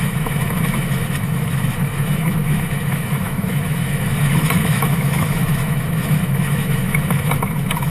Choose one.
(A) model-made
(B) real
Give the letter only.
A